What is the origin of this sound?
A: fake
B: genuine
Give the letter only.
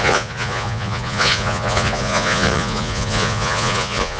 A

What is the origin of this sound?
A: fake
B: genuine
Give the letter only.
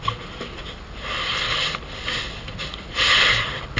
B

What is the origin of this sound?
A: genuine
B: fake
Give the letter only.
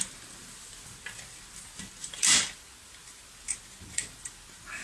A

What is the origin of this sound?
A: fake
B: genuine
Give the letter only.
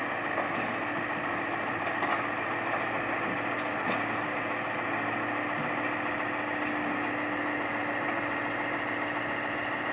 B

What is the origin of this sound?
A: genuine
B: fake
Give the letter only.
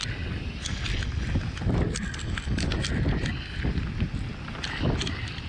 A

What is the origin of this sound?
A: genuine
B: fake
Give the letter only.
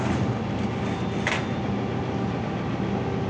A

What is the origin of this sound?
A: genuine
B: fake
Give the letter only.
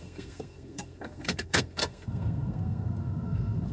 B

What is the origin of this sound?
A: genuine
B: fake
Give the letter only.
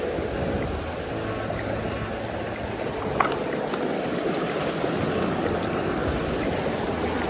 A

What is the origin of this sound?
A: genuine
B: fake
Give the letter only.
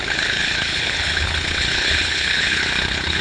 B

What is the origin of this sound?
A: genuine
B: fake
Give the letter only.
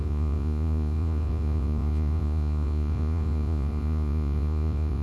B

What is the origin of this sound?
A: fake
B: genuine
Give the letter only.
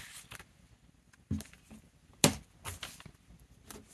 B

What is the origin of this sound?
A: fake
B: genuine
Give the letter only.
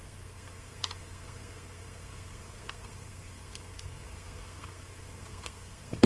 A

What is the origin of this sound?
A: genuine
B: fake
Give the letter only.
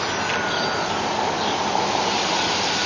A